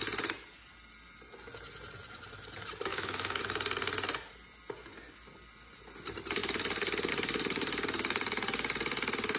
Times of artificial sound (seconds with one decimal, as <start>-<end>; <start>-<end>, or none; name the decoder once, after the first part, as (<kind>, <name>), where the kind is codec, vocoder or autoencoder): 2.9-3.4 (autoencoder, DAC-VAE)

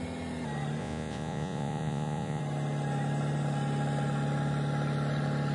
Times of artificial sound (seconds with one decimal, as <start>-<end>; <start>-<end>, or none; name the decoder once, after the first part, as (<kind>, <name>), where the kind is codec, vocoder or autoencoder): 0.8-2.4 (vocoder, Vocos)